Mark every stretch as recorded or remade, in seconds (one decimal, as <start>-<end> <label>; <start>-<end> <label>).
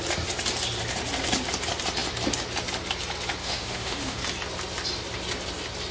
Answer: 0.0-3.4 recorded; 3.4-4.2 remade; 4.2-5.9 recorded